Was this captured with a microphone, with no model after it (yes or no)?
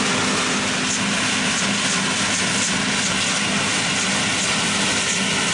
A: yes